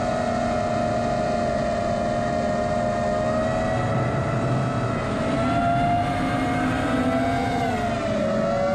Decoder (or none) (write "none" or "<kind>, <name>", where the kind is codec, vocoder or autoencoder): none